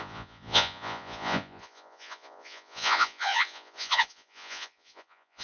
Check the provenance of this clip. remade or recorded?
remade